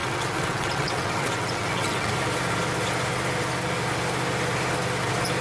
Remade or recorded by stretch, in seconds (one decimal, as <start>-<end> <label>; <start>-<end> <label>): 0.0-2.1 remade; 2.1-5.4 recorded